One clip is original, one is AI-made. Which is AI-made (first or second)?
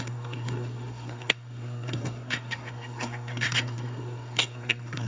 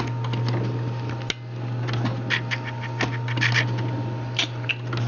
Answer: first